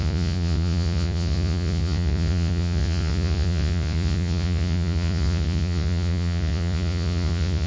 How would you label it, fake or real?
fake